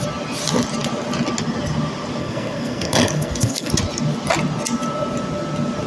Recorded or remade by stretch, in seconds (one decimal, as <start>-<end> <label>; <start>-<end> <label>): 0.0-2.2 recorded; 2.2-3.7 remade; 3.7-5.9 recorded